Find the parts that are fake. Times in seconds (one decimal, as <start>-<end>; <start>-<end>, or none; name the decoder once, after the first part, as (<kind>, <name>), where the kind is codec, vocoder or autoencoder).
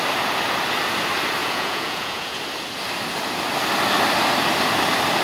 1.4-2.4 (vocoder, Vocos)